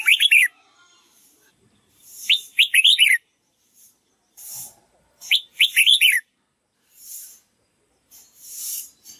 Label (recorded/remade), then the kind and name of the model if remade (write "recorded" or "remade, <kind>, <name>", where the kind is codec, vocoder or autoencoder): remade, vocoder, BigVGAN v2